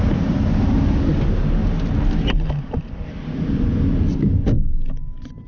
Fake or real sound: real